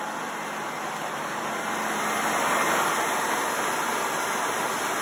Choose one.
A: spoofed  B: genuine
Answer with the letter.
B